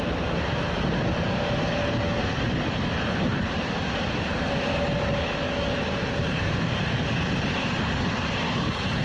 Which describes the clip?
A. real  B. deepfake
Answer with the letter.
A